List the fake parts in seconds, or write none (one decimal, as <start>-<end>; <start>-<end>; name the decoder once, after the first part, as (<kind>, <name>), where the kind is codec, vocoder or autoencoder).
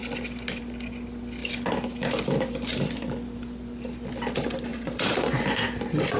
4.7-5.5 (vocoder, BigVGAN v2)